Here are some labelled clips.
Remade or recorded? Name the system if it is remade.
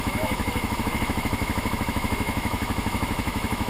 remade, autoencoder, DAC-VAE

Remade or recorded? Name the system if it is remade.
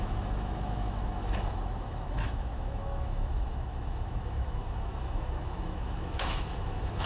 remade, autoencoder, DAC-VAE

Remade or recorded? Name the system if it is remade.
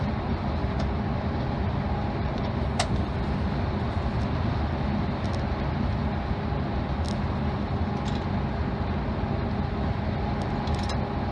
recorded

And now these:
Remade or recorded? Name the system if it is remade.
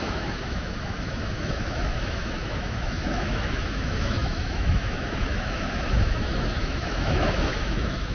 remade, autoencoder, DAC-VAE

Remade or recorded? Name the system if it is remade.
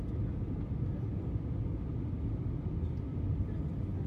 recorded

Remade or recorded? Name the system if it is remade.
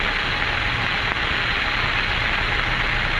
recorded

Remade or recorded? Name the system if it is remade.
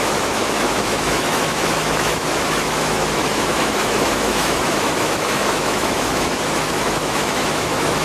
remade, autoencoder, DAC-VAE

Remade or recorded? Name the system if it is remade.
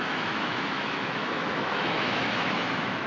remade, autoencoder, DAC-VAE